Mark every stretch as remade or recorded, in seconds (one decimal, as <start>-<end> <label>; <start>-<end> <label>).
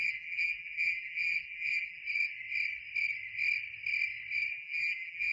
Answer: 0.0-2.0 remade; 2.0-4.5 recorded; 4.5-5.3 remade